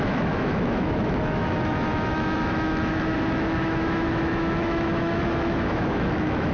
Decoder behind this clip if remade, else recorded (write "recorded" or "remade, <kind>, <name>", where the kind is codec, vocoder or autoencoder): remade, autoencoder, DAC-VAE